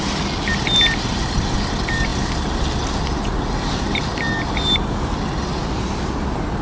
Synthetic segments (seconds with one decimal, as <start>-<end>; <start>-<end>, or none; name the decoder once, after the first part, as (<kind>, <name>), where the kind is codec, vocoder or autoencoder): none